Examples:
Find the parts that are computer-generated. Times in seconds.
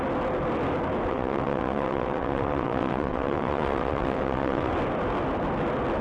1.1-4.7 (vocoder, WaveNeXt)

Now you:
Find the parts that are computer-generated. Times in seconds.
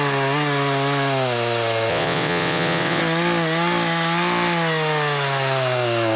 1.9-3.0 (vocoder, WaveNeXt)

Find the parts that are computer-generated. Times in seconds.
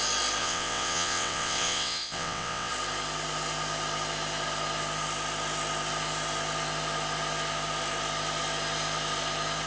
0.4-2.7 (vocoder, WaveNeXt)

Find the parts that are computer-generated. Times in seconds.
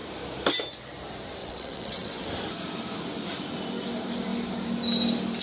1.4-2.2 (vocoder, WaveNeXt)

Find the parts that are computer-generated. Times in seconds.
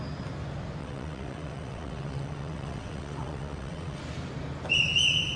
0.8-4.0 (vocoder, WaveNeXt)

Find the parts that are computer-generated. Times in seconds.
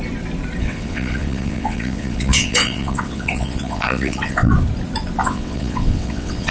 0.6-4.5 (vocoder, WaveNeXt); 5.2-6.5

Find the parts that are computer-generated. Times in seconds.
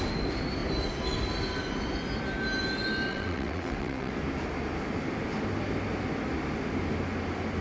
3.1-4.1 (vocoder, WaveNeXt)